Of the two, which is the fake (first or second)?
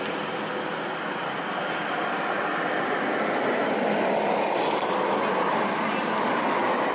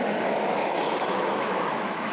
second